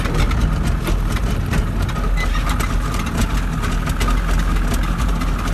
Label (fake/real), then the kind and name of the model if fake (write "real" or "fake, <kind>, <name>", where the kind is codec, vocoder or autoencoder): real